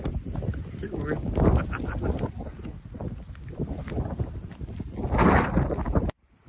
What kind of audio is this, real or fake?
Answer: real